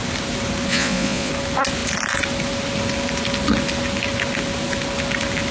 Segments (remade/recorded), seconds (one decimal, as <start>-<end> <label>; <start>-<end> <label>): 0.0-0.7 recorded; 0.7-1.3 remade; 1.3-5.5 recorded